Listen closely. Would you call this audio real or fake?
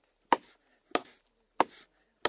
real